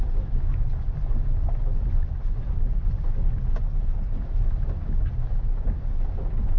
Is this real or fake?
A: real